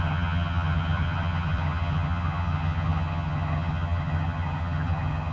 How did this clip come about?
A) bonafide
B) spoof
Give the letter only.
B